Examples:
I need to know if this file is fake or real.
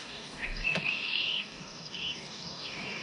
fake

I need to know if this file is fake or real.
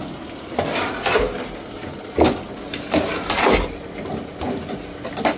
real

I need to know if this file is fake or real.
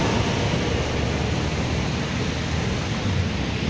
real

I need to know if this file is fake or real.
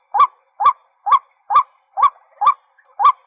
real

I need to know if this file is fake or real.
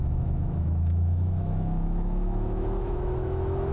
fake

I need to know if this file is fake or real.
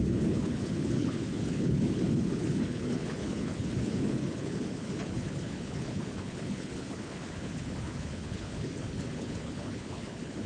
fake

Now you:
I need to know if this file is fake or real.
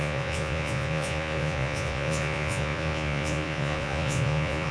fake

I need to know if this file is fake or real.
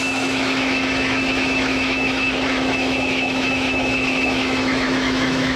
fake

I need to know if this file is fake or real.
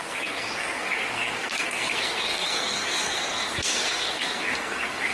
fake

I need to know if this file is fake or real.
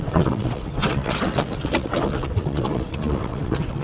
fake